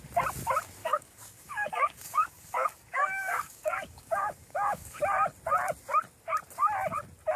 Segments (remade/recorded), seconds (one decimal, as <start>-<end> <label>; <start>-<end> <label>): 0.0-0.8 recorded; 0.8-5.0 remade; 5.0-7.4 recorded